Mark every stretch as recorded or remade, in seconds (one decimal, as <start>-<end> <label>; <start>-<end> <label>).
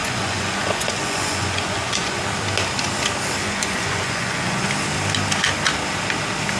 0.0-2.2 remade; 2.2-3.4 recorded; 3.4-4.7 remade; 4.7-6.6 recorded